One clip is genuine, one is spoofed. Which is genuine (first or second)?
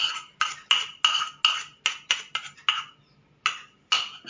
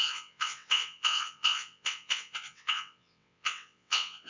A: first